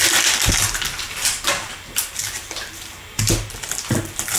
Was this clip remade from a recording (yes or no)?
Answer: yes